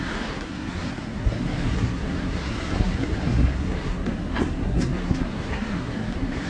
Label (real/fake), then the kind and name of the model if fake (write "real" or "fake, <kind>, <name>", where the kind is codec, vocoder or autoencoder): fake, codec, SNAC